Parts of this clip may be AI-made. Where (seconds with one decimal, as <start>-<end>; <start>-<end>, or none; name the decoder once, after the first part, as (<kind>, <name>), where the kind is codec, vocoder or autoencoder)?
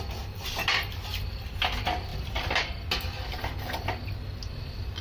none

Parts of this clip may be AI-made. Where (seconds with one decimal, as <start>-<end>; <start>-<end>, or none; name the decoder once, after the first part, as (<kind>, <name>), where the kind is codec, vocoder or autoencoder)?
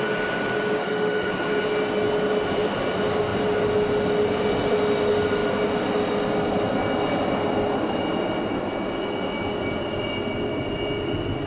0.8-1.3 (autoencoder, DAC-VAE)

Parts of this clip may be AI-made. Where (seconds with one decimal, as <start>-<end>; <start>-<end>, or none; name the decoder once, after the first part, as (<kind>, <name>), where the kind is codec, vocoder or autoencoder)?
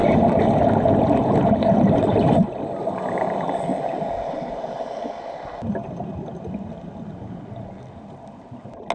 none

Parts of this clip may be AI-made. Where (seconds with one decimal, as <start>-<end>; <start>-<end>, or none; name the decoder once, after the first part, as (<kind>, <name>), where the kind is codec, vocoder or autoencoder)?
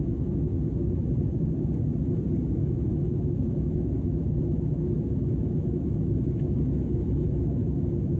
0.0-0.5 (autoencoder, DAC-VAE); 2.5-8.2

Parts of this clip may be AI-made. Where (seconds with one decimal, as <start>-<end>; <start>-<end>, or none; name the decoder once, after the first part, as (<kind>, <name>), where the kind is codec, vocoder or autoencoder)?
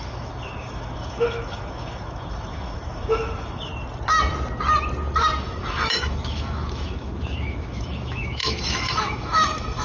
0.0-3.7 (autoencoder, DAC-VAE); 5.4-9.8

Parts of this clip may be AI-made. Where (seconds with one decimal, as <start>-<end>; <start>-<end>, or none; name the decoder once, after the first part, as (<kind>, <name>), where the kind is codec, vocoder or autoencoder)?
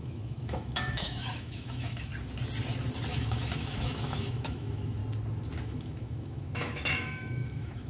0.0-2.1 (autoencoder, DAC-VAE); 3.1-5.0; 5.6-7.9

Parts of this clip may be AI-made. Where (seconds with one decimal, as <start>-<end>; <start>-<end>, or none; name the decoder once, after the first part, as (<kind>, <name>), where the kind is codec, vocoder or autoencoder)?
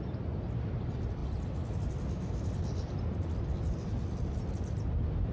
none